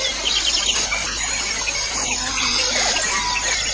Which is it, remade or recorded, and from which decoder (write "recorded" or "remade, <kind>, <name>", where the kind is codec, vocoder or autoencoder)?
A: recorded